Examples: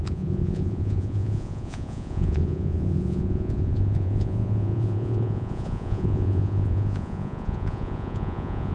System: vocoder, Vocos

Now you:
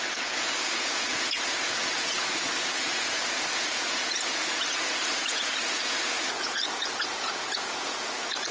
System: vocoder, Vocos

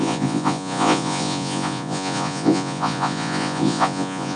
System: vocoder, Vocos